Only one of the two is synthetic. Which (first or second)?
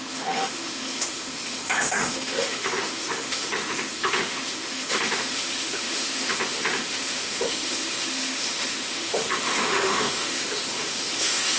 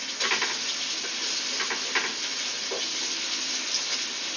first